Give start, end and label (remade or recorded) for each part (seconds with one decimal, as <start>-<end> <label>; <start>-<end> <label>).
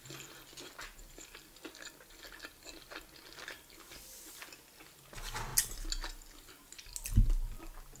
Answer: 0.0-8.0 recorded